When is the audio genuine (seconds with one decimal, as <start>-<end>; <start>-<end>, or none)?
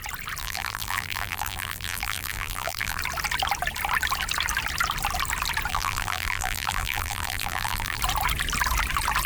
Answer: 0.0-0.4; 3.0-5.7; 8.0-9.3